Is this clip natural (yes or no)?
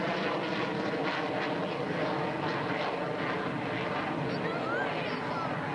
yes